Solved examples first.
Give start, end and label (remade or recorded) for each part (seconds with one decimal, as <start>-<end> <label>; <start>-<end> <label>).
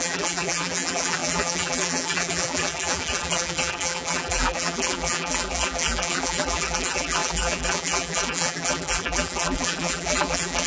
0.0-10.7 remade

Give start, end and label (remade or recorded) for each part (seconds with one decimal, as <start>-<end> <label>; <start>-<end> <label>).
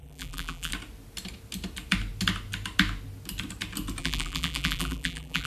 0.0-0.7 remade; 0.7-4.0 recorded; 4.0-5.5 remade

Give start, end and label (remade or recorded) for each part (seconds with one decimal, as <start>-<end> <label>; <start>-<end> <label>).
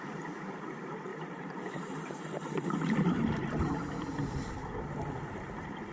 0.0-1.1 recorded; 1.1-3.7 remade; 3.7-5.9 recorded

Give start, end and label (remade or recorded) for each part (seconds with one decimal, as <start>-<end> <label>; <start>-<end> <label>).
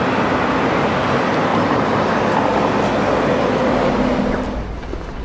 0.0-1.5 recorded; 1.5-2.0 remade; 2.0-5.2 recorded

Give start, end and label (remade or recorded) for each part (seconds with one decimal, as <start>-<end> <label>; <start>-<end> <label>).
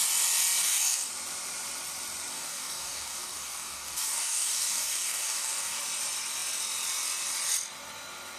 0.0-0.6 recorded; 0.6-1.1 remade; 1.1-2.3 recorded; 2.3-5.8 remade; 5.8-8.4 recorded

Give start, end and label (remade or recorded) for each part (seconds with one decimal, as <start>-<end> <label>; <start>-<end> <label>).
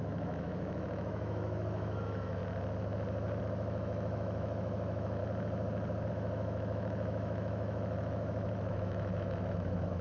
0.0-2.4 remade; 2.4-3.4 recorded; 3.4-5.2 remade; 5.2-6.1 recorded; 6.1-10.0 remade